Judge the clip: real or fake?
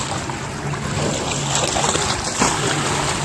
real